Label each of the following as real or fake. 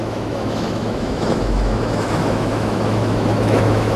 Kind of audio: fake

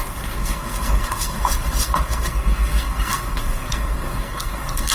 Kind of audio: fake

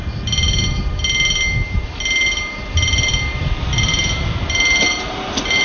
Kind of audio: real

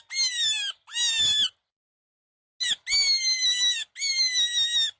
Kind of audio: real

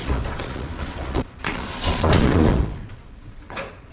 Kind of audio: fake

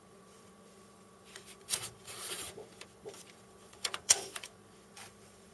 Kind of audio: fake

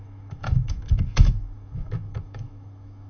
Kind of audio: fake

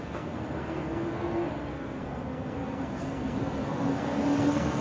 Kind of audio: fake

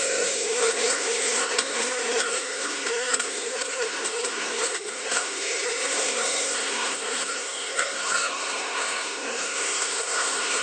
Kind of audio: fake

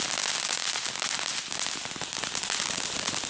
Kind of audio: real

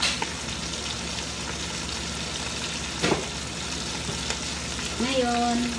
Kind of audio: real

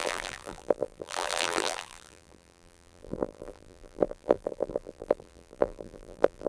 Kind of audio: fake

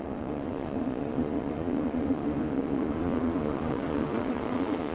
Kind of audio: fake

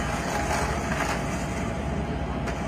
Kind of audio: real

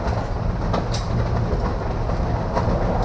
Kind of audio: real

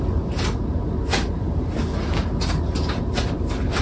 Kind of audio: real